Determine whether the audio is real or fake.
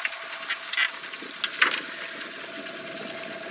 real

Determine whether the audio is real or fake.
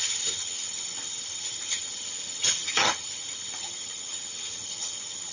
fake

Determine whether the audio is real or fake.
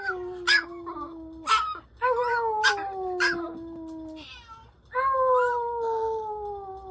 real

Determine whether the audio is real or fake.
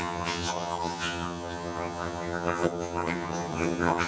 fake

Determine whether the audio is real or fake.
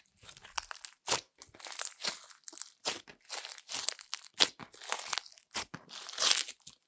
real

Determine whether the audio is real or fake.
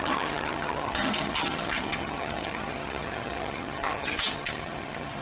fake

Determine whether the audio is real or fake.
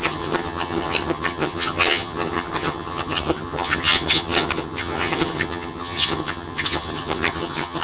fake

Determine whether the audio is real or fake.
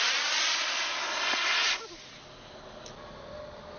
real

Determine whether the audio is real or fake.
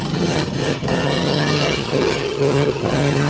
fake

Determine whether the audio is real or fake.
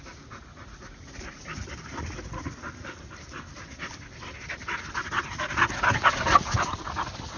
real